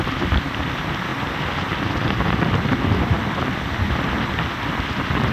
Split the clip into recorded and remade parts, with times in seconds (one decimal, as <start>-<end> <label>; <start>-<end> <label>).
0.0-5.3 recorded

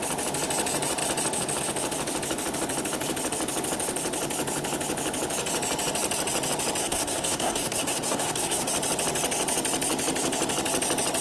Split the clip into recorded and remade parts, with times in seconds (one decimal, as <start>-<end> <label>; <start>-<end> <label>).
0.0-6.8 recorded; 6.8-8.7 remade; 8.7-11.2 recorded

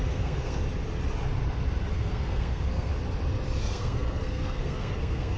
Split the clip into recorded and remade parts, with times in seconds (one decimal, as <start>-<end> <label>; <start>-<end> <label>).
0.0-0.6 remade; 0.6-1.9 recorded; 1.9-2.9 remade; 2.9-3.6 recorded; 3.6-5.4 remade

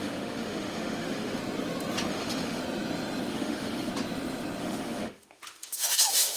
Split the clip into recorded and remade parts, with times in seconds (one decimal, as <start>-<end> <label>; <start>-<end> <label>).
0.0-1.4 remade; 1.4-2.1 recorded; 2.1-2.6 remade; 2.6-3.3 recorded; 3.3-3.9 remade; 3.9-4.6 recorded; 4.6-6.4 remade

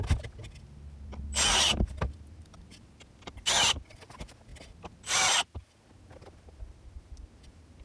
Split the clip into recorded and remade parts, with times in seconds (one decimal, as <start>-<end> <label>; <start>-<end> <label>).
0.0-7.8 recorded